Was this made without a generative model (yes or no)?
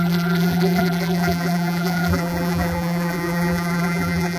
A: no